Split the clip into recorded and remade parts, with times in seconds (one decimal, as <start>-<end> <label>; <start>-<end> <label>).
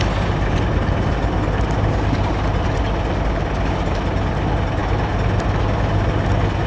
0.0-6.7 recorded